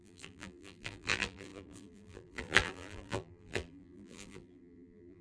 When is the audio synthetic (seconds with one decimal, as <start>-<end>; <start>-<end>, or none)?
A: 0.0-5.2